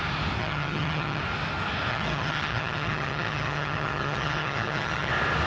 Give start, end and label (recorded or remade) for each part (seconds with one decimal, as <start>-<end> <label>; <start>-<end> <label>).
0.0-0.4 recorded; 0.4-1.2 remade; 1.2-1.9 recorded; 1.9-5.1 remade; 5.1-5.5 recorded